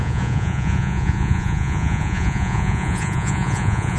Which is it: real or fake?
fake